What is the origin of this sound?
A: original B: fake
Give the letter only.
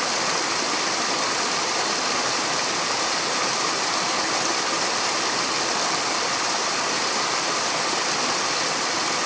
A